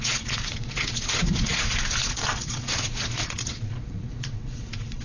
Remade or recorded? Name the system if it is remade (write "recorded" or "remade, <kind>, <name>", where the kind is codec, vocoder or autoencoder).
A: remade, vocoder, Vocos